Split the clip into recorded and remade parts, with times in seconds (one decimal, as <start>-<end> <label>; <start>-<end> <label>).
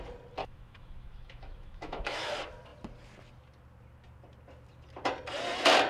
0.0-0.4 recorded; 0.4-2.3 remade; 2.3-5.9 recorded